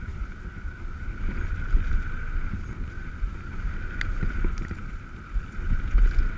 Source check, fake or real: real